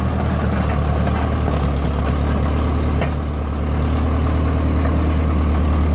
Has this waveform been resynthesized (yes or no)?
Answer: no